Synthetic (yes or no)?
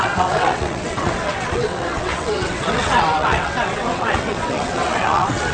yes